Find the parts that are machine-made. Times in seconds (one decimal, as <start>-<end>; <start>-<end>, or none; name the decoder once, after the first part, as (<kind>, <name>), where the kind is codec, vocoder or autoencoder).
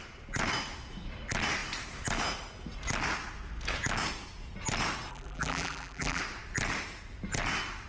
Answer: 5.1-6.2 (vocoder, BigVGAN v2)